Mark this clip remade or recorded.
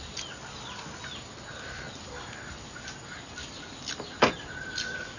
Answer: recorded